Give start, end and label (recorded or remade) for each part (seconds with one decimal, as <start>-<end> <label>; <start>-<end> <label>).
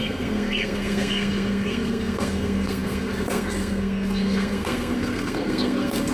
0.0-6.1 remade